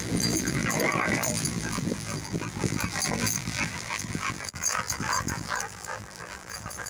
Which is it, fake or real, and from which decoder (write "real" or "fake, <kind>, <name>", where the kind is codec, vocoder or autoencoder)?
fake, vocoder, BigVGAN v2